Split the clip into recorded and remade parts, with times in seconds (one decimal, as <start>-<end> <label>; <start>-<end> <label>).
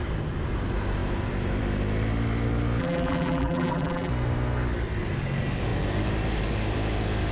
0.0-2.8 recorded; 2.8-4.1 remade; 4.1-7.3 recorded